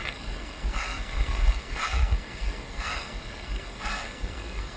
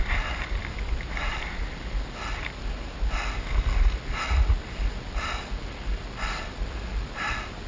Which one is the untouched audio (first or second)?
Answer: second